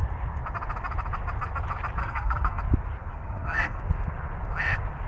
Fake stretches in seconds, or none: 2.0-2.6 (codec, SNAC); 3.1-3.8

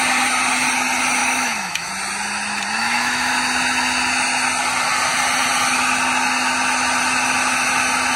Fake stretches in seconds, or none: 1.2-1.9 (autoencoder, DAC-VAE); 2.8-3.3

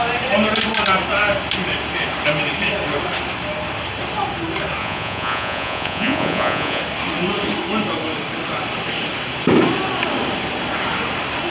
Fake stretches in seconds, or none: 4.8-6.8 (vocoder, Vocos)

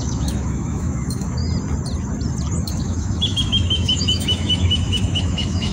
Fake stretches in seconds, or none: 0.0-1.4 (autoencoder, DAC-VAE); 2.7-5.7

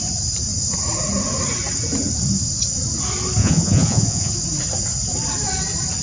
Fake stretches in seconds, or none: 3.4-4.3 (vocoder, Vocos)

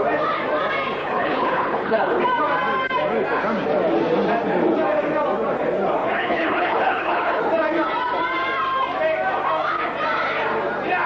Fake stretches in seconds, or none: 1.0-2.2 (codec, HILCodec); 6.0-7.4